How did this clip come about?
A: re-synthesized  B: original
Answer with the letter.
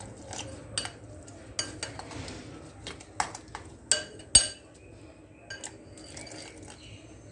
B